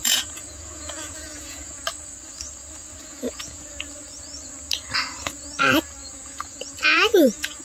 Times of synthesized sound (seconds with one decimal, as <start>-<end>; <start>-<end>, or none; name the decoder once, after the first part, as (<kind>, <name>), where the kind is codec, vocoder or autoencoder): 0.0-1.8 (vocoder, Vocos); 3.0-3.7; 6.0-7.6